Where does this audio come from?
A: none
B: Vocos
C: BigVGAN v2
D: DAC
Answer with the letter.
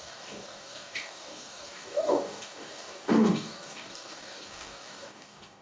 D